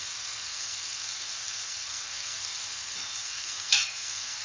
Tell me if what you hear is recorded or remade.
remade